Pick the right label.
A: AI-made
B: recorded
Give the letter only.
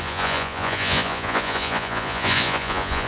A